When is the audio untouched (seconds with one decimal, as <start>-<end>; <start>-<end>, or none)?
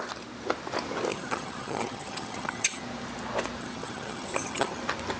0.0-1.1; 2.8-3.6; 4.8-5.2